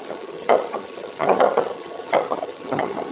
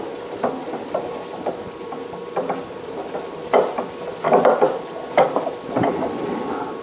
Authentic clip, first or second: second